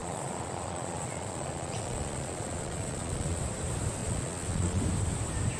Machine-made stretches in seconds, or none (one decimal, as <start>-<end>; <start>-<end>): 0.0-3.4; 4.0-4.8